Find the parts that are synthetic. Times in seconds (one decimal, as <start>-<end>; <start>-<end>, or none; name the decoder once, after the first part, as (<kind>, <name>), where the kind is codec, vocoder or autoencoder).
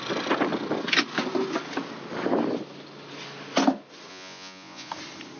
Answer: 4.1-4.9 (vocoder, Vocos)